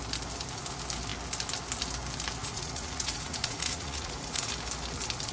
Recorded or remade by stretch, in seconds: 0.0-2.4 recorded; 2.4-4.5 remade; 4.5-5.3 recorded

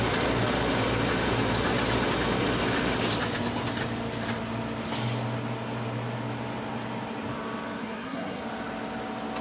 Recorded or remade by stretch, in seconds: 0.0-7.8 recorded; 7.8-8.4 remade; 8.4-9.4 recorded

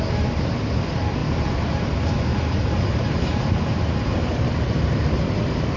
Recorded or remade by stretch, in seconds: 0.0-1.2 recorded; 1.2-1.8 remade; 1.8-2.3 recorded; 2.3-5.8 remade

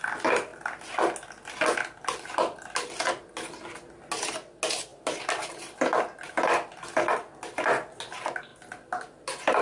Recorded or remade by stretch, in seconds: 0.0-9.6 recorded

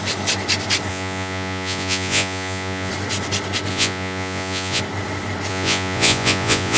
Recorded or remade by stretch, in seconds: 0.0-0.9 recorded; 0.9-2.9 remade; 2.9-3.7 recorded; 3.7-4.8 remade; 4.8-5.5 recorded; 5.5-6.8 remade

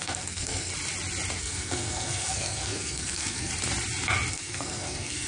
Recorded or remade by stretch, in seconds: 0.0-0.7 remade; 0.7-1.4 recorded; 1.4-3.5 remade; 3.5-4.3 recorded; 4.3-5.3 remade